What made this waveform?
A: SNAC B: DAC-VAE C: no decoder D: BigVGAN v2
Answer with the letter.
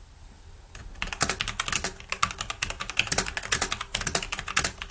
C